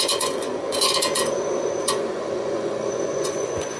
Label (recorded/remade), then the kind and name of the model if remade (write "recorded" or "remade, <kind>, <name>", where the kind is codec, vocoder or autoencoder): remade, vocoder, Vocos